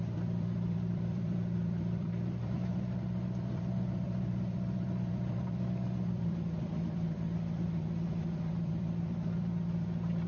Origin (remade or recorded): remade